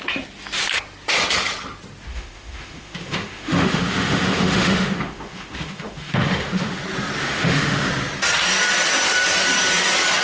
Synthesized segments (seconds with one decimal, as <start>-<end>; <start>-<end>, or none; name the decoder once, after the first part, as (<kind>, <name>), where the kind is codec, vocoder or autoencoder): 2.1-6.8 (autoencoder, DAC-VAE); 7.2-7.9